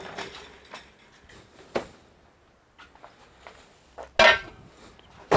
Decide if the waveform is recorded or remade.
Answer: recorded